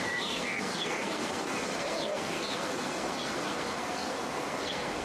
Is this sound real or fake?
fake